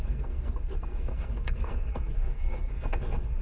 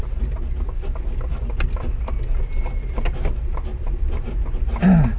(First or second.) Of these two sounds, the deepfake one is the first